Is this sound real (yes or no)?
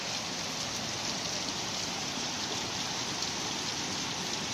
yes